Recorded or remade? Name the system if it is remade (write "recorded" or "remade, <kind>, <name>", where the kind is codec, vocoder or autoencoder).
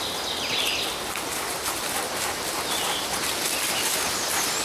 recorded